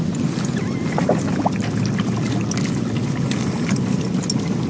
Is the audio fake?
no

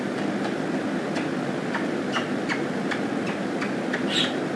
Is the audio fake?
no